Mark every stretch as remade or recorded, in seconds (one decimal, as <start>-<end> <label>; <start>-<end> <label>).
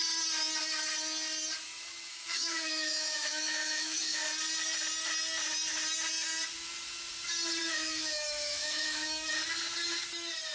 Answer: 0.0-2.1 recorded; 2.1-4.2 remade; 4.2-7.6 recorded; 7.6-9.3 remade; 9.3-10.5 recorded